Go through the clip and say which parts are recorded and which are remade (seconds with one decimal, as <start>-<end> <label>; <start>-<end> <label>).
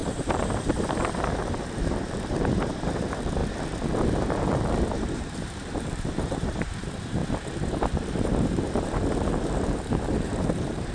0.0-3.4 remade; 3.4-4.1 recorded; 4.1-7.2 remade; 7.2-8.2 recorded; 8.2-10.9 remade